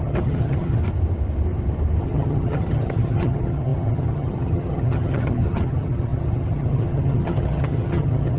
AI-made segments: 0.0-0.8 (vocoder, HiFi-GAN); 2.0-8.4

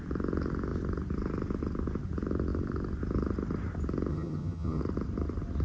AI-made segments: 4.1-4.8 (vocoder, HiFi-GAN)

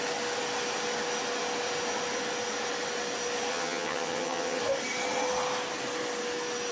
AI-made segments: 3.5-4.6 (vocoder, HiFi-GAN)

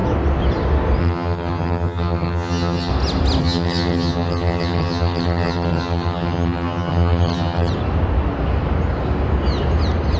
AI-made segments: 1.0-2.9 (vocoder, HiFi-GAN); 3.4-7.7

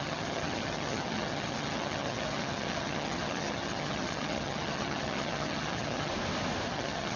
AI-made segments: 0.0-6.1 (vocoder, HiFi-GAN); 6.7-7.2

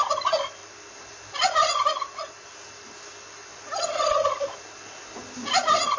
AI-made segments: none

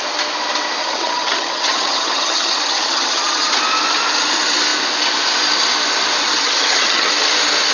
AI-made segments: 0.8-3.5 (vocoder, HiFi-GAN); 6.2-7.1